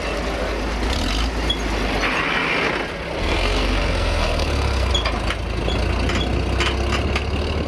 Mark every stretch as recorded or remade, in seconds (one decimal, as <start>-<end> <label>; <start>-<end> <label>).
0.0-3.2 recorded; 3.2-4.9 remade; 4.9-7.7 recorded